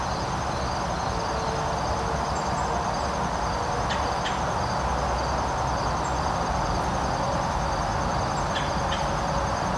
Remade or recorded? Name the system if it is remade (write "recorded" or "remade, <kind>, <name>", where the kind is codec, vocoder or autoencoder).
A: recorded